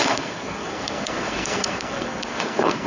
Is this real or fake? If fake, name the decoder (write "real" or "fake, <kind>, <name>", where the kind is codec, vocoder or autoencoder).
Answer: fake, codec, SNAC